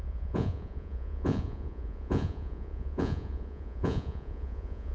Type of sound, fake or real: fake